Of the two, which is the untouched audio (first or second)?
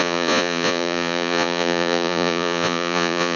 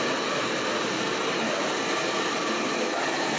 second